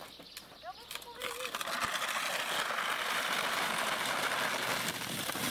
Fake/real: real